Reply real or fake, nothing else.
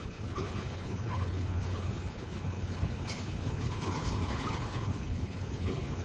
fake